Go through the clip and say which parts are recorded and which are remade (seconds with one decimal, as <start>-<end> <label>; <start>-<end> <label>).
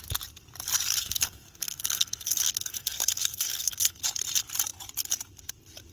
0.0-1.0 recorded; 1.0-4.0 remade; 4.0-5.9 recorded